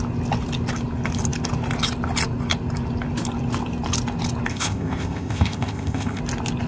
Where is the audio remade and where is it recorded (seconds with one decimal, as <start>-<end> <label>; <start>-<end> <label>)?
0.0-4.5 recorded; 4.5-6.2 remade; 6.2-6.7 recorded